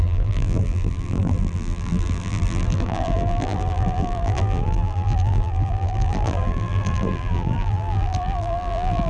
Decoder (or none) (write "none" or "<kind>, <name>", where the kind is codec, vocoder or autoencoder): vocoder, BigVGAN v2